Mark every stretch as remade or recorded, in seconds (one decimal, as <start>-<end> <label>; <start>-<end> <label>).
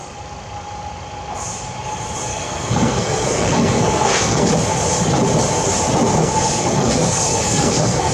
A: 0.0-2.3 recorded; 2.3-4.5 remade; 4.5-6.1 recorded; 6.1-8.1 remade